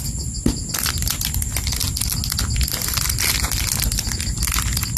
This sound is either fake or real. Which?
real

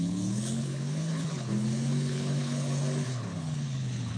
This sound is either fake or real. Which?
fake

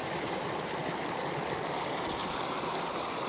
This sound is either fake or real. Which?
real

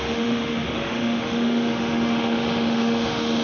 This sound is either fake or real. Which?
fake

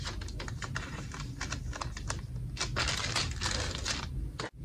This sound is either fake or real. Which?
real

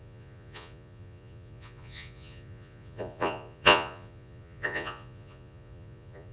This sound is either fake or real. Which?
fake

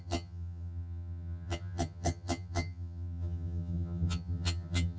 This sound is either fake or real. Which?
fake